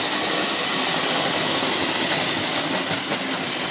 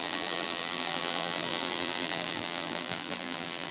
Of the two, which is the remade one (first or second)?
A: second